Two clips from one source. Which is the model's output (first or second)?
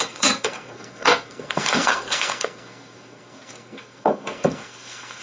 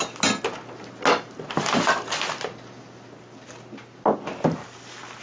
first